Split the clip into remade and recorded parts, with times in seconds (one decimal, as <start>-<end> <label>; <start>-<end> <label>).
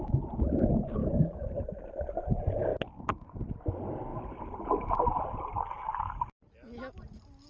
0.0-1.0 recorded; 1.0-1.5 remade; 1.5-7.5 recorded